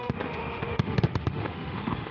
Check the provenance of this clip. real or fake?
fake